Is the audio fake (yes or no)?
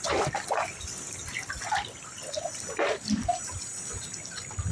no